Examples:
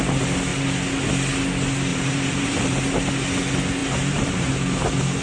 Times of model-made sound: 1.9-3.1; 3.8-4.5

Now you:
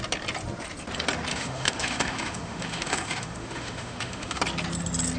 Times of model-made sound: 1.3-4.4